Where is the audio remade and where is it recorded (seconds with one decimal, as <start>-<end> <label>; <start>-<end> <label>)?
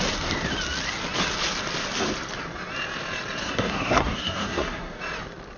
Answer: 0.0-3.4 recorded; 3.4-5.0 remade; 5.0-5.6 recorded